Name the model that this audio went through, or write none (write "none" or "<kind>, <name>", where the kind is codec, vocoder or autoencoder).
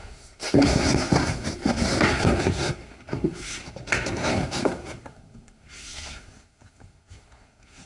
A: codec, SNAC